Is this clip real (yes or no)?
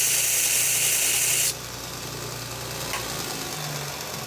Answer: yes